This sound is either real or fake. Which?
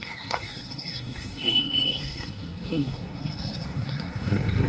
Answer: fake